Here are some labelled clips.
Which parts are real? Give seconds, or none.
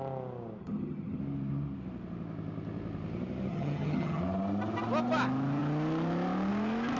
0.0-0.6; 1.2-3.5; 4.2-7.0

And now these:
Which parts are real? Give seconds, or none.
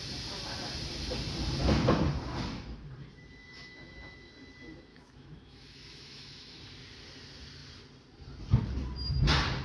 0.0-3.4; 4.3-4.9; 6.6-9.6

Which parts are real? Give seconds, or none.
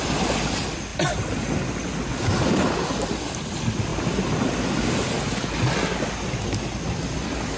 0.0-7.6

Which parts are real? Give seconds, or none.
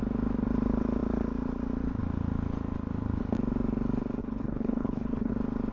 0.0-4.2; 5.3-5.7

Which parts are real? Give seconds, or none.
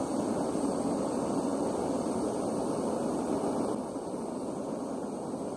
0.0-5.6